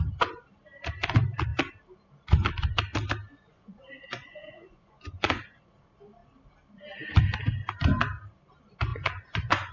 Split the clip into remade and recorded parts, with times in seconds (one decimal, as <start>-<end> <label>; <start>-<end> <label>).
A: 0.0-3.3 recorded; 3.3-5.7 remade; 5.7-8.9 recorded; 8.9-9.7 remade